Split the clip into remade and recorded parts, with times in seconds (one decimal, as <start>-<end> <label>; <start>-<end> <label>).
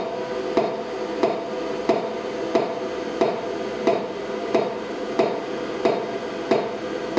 0.0-3.9 recorded; 3.9-5.1 remade; 5.1-7.2 recorded